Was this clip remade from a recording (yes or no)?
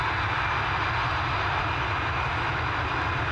no